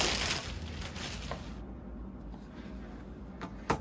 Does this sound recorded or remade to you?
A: recorded